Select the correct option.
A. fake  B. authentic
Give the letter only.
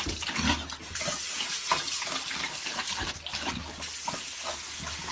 B